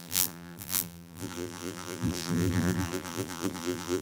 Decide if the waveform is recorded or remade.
remade